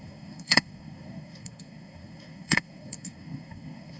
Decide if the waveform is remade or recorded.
remade